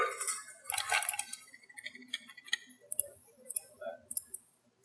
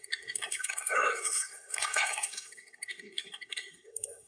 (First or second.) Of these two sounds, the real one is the first